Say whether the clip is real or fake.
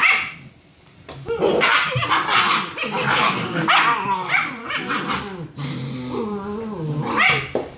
real